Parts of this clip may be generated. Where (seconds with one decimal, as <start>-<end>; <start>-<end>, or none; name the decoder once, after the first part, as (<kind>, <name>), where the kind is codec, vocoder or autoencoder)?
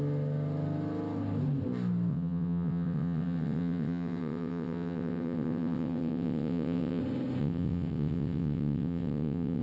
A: 2.1-7.0 (vocoder, WaveNeXt); 7.4-9.6